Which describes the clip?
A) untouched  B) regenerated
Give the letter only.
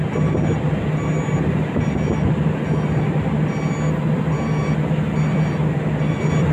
A